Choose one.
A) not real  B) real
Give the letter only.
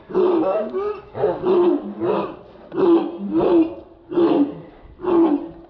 B